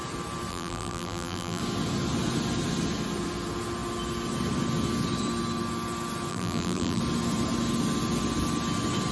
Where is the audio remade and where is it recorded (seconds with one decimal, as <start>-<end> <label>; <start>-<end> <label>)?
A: 0.0-0.5 recorded; 0.5-1.6 remade; 1.6-6.3 recorded; 6.3-7.0 remade; 7.0-9.1 recorded